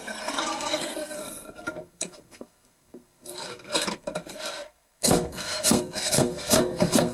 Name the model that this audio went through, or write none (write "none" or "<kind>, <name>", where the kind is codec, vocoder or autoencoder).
codec, SNAC